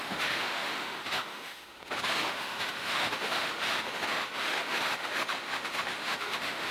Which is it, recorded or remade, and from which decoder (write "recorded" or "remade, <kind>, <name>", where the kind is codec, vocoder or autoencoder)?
remade, autoencoder, DAC-VAE